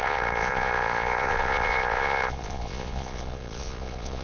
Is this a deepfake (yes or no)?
yes